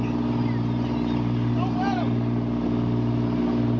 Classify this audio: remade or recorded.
recorded